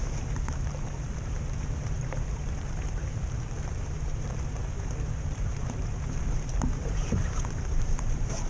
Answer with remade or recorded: remade